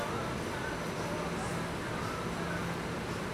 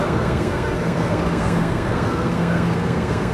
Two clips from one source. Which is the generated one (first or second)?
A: second